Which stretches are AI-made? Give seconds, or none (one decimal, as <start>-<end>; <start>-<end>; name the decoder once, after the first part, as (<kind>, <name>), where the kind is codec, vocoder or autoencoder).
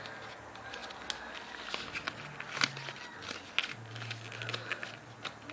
none